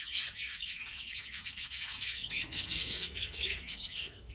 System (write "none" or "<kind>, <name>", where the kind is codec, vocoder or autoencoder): codec, SNAC